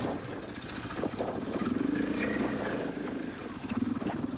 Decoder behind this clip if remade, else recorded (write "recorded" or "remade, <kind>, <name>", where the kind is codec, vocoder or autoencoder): recorded